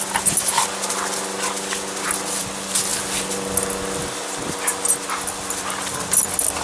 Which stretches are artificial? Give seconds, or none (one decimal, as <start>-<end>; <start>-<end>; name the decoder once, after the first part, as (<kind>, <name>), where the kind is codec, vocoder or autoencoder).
none